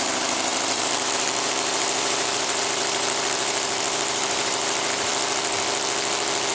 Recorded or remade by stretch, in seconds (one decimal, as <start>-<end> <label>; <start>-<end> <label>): 0.0-5.1 remade; 5.1-6.5 recorded

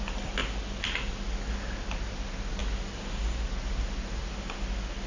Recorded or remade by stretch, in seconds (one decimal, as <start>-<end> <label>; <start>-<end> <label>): 0.0-5.1 recorded

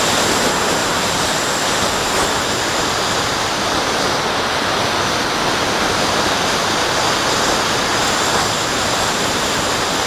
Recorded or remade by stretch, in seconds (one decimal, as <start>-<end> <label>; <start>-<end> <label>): 0.0-0.8 recorded; 0.8-3.7 remade; 3.7-10.1 recorded